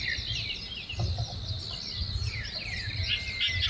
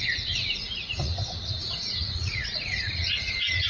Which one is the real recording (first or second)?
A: first